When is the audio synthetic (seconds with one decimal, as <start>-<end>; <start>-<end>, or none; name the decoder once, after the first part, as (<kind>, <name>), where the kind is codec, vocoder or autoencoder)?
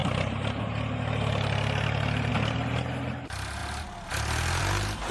none